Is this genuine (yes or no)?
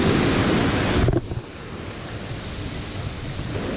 yes